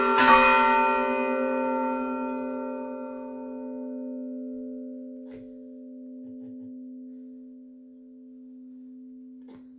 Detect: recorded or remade recorded